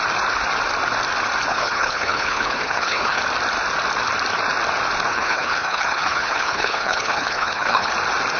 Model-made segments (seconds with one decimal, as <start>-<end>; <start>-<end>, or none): 1.5-3.2; 5.1-7.9